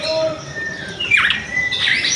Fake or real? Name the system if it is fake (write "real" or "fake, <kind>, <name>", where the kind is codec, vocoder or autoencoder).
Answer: real